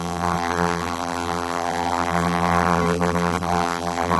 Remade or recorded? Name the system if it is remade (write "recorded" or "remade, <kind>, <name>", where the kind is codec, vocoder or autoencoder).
remade, vocoder, BigVGAN v2